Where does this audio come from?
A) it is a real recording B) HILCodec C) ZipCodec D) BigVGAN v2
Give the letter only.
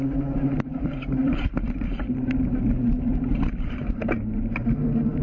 D